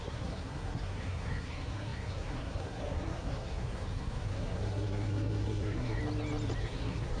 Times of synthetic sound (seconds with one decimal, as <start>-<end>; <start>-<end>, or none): 0.0-6.0; 6.6-7.2